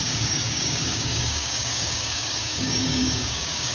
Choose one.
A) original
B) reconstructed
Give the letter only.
B